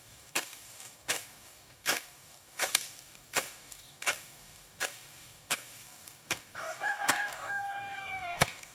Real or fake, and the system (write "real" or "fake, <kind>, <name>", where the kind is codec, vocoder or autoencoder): fake, codec, DAC